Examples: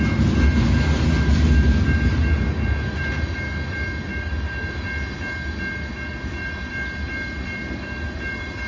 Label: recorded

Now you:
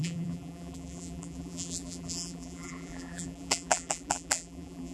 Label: remade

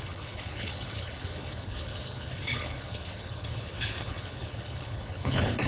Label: remade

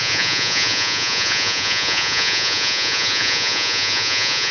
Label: remade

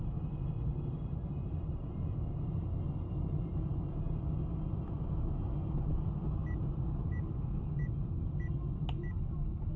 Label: recorded